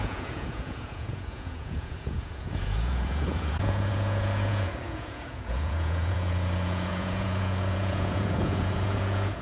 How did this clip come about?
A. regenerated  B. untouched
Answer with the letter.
A